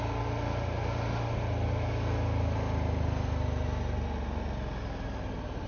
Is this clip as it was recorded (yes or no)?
yes